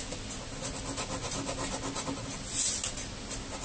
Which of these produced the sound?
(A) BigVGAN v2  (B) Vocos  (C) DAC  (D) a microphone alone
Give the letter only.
D